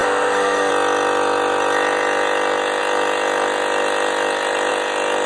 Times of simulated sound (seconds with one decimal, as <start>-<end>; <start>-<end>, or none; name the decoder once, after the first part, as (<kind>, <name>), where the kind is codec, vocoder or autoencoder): 0.0-0.7 (codec, SNAC)